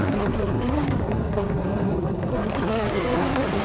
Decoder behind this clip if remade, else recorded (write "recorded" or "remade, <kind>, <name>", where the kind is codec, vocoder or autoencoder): remade, codec, SNAC